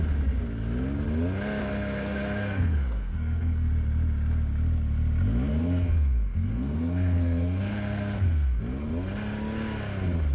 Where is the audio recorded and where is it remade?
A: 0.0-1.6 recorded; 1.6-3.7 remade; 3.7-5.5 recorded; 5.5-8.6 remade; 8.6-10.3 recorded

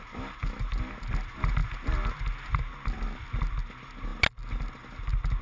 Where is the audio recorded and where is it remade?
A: 0.0-5.4 recorded

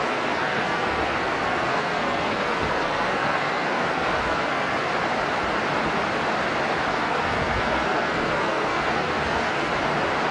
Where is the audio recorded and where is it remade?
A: 0.0-4.9 remade; 4.9-6.9 recorded; 6.9-9.7 remade; 9.7-10.3 recorded

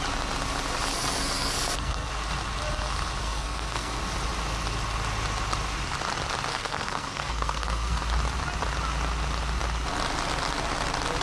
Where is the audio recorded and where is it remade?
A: 0.0-0.9 recorded; 0.9-2.1 remade; 2.1-3.2 recorded; 3.2-4.0 remade; 4.0-6.5 recorded; 6.5-8.0 remade; 8.0-11.2 recorded